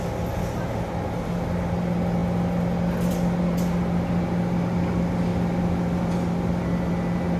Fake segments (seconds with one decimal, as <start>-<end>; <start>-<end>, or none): none